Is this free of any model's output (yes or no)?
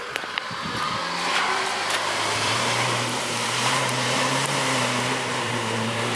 no